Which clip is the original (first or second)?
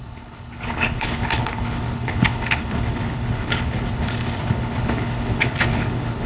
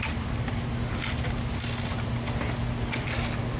second